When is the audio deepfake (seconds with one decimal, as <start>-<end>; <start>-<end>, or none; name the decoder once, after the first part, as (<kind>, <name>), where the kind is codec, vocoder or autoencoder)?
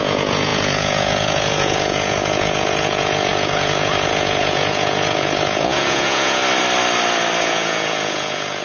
0.0-6.4 (vocoder, Vocos); 7.4-8.6